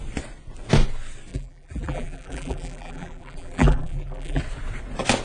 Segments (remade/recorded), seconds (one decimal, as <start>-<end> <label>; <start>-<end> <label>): 0.0-1.3 recorded; 1.3-4.4 remade; 4.4-5.2 recorded